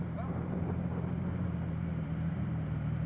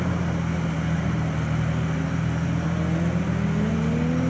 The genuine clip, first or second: second